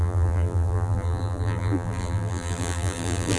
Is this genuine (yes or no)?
no